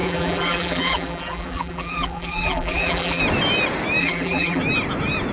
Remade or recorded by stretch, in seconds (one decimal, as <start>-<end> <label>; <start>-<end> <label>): 0.0-3.2 remade; 3.2-4.0 recorded; 4.0-4.6 remade; 4.6-5.3 recorded